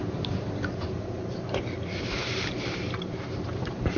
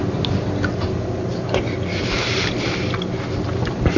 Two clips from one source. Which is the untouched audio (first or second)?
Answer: second